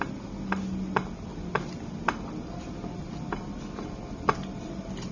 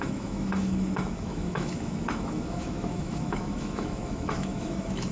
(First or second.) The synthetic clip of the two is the second